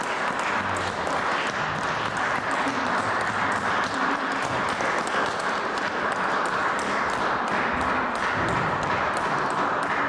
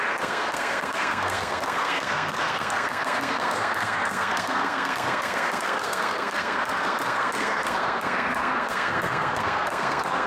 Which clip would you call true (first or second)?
first